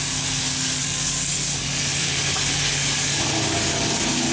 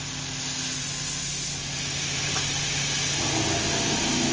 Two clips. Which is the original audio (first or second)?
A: second